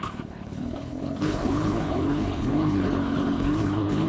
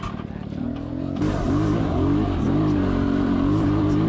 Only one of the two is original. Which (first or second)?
second